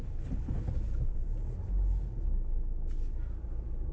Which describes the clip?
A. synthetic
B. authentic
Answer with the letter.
B